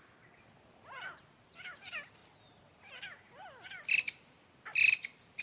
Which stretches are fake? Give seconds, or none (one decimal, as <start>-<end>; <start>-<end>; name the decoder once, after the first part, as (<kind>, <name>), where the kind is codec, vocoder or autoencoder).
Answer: none